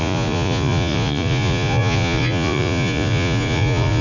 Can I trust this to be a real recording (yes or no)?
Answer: no